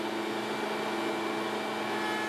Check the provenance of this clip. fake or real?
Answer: real